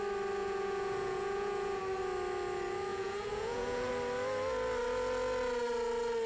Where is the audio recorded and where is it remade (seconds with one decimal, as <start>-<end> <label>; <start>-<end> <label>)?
0.0-0.4 recorded; 0.4-1.8 remade; 1.8-2.9 recorded; 2.9-3.9 remade; 3.9-6.3 recorded